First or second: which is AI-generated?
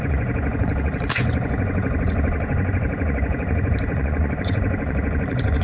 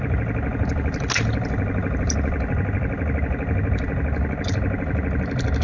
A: first